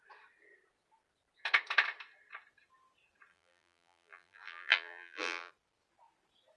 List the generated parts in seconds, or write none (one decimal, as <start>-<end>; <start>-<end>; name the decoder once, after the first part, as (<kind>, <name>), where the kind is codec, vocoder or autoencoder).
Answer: 3.3-5.5 (vocoder, BigVGAN v2)